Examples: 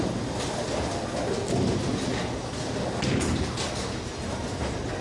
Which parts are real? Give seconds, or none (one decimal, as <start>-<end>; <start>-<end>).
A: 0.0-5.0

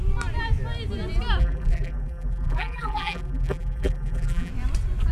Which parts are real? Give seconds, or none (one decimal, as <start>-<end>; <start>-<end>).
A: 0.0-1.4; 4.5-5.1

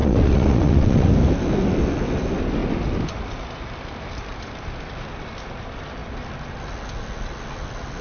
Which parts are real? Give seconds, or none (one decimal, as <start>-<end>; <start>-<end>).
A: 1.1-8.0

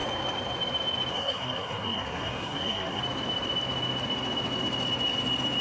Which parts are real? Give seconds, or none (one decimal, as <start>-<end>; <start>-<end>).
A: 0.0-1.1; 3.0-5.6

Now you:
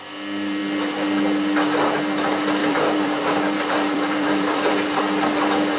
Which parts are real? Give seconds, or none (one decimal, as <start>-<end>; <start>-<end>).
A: 0.0-2.6; 5.0-5.8

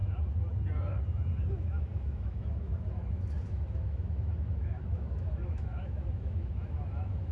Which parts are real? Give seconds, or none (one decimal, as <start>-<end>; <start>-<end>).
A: 0.0-1.5